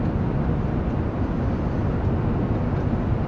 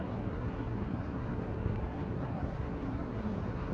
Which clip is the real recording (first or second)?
first